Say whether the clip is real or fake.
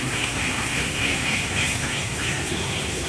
fake